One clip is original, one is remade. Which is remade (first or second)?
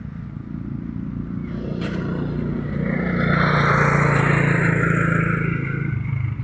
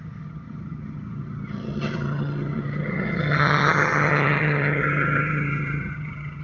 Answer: second